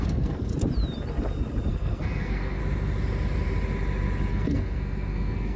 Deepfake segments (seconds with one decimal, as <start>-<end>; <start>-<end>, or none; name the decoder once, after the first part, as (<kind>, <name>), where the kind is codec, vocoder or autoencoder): 0.0-0.5 (codec, SNAC); 1.7-2.6; 4.3-5.6